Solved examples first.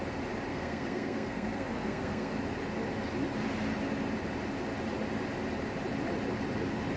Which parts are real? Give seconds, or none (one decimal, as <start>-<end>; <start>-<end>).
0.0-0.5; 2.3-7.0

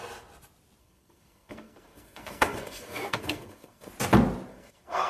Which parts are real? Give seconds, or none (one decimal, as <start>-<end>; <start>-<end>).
0.0-0.8; 3.9-4.5

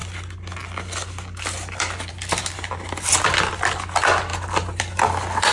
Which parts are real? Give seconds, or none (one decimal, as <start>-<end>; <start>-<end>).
0.0-5.5

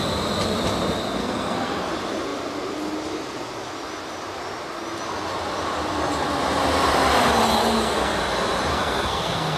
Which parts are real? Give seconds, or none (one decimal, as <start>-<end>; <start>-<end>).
0.0-1.2; 1.9-7.6; 8.2-8.7